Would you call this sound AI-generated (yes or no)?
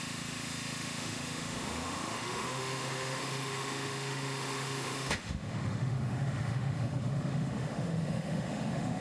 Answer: yes